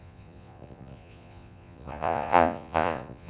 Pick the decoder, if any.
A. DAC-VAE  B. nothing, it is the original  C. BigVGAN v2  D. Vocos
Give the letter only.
D